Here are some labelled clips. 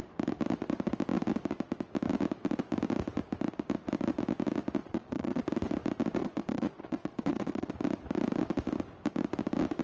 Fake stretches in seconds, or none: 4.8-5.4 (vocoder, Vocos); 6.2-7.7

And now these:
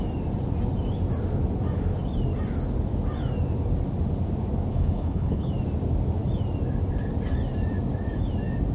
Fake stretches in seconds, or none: 4.7-5.5 (codec, HILCodec)